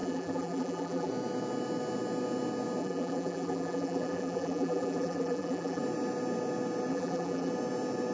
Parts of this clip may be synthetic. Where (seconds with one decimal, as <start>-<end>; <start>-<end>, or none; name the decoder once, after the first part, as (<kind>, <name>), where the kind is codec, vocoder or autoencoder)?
0.0-1.1 (vocoder, BigVGAN v2); 2.8-5.8; 6.9-7.5